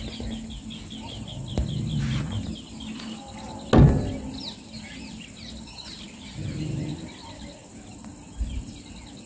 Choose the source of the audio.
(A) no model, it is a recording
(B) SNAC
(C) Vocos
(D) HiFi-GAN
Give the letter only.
A